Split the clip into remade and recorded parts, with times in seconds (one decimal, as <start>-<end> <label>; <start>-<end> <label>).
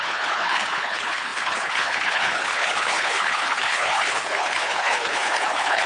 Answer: 0.0-5.9 remade